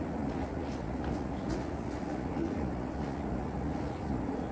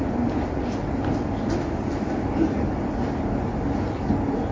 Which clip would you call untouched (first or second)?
second